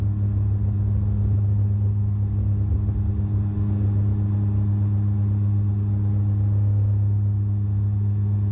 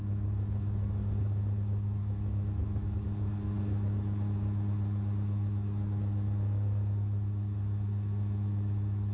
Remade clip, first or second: second